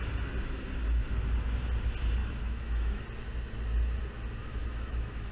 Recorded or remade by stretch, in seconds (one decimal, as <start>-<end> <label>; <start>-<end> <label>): 0.0-2.2 recorded; 2.2-3.0 remade; 3.0-4.4 recorded; 4.4-5.3 remade